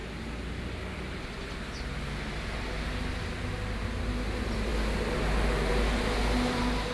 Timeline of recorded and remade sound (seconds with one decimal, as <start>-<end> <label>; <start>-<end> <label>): 0.0-6.9 recorded